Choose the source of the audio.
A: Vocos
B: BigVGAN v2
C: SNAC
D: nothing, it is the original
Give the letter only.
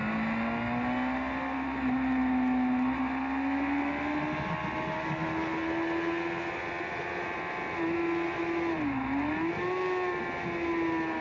D